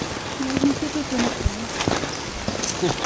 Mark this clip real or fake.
real